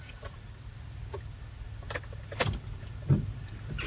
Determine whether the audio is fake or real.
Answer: fake